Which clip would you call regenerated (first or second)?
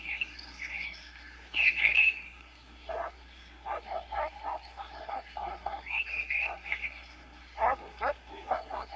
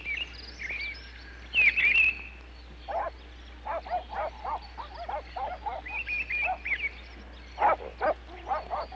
first